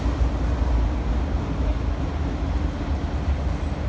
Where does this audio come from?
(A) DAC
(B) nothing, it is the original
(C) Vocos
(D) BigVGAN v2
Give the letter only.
B